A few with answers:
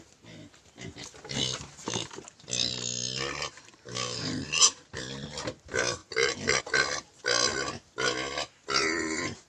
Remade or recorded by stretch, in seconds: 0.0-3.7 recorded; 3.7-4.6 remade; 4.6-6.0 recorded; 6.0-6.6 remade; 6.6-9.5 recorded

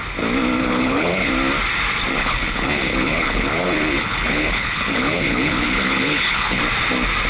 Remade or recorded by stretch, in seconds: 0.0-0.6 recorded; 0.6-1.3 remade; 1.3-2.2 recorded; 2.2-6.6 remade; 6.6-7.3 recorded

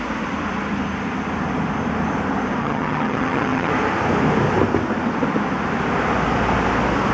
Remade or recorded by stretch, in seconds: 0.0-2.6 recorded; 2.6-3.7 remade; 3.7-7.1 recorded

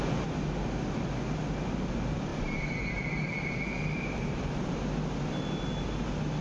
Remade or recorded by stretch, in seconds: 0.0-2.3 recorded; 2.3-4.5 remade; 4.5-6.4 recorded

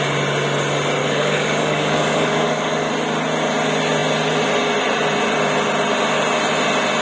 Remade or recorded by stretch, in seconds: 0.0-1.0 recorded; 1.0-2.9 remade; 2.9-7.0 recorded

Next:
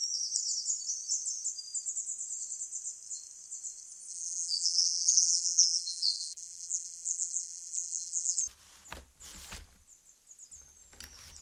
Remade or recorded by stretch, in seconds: 0.0-4.1 recorded; 4.1-8.4 remade; 8.4-11.4 recorded